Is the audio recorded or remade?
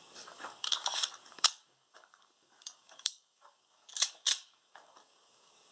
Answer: remade